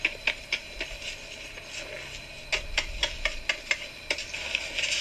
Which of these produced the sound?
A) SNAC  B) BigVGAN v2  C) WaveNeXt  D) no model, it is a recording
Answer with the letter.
D